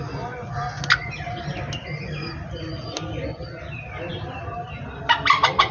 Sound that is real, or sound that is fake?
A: real